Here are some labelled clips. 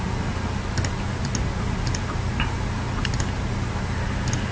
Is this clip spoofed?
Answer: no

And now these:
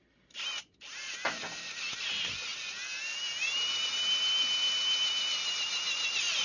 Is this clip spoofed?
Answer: no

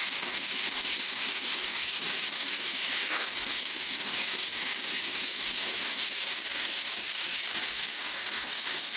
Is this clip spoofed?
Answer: yes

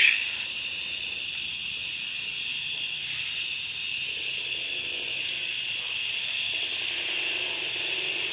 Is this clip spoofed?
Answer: no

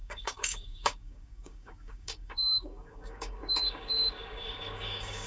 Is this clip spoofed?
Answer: yes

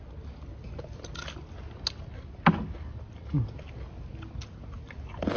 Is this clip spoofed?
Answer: no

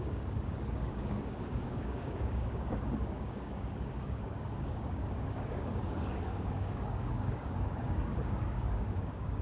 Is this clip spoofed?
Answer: yes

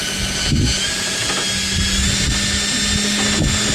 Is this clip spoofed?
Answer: no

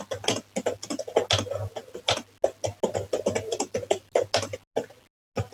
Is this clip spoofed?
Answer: no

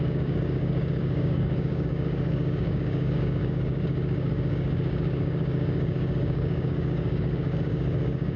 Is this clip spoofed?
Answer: yes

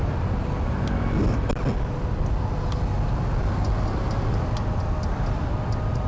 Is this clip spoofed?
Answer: no